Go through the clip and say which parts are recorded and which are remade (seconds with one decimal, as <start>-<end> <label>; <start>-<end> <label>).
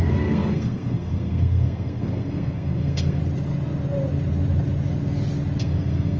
0.0-3.2 remade; 3.2-5.6 recorded; 5.6-6.2 remade